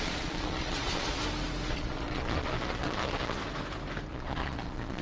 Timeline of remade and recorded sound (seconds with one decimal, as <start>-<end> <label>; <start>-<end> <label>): 0.0-1.2 remade; 1.2-1.7 recorded; 1.7-3.4 remade; 3.4-4.1 recorded; 4.1-5.0 remade